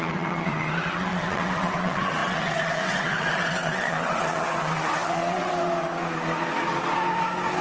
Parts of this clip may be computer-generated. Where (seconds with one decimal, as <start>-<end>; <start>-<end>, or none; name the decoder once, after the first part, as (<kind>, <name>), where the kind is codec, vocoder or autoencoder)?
0.0-5.5 (vocoder, WaveNeXt)